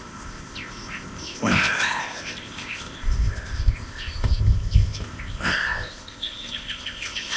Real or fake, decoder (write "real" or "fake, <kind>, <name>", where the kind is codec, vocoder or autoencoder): fake, codec, ZipCodec